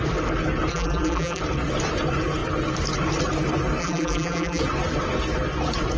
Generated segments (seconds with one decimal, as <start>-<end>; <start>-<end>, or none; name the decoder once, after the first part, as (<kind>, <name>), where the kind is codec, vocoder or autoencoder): 0.7-1.4 (vocoder, BigVGAN v2); 3.8-4.6